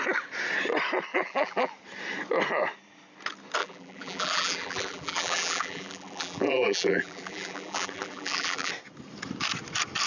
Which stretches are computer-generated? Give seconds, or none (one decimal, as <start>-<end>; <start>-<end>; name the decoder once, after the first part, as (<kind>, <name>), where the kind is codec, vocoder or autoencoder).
1.1-1.7 (vocoder, BigVGAN v2); 3.6-8.7

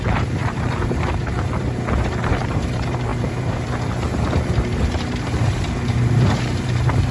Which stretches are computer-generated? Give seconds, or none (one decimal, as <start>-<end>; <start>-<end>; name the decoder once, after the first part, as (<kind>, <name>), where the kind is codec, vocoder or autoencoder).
0.0-7.1 (vocoder, BigVGAN v2)